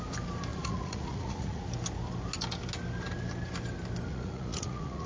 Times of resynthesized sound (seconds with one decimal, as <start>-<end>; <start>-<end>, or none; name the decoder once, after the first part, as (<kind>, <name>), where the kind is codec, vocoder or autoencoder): 0.5-1.6 (vocoder, Vocos); 4.1-5.1